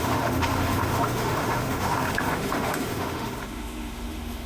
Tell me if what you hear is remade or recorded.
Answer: remade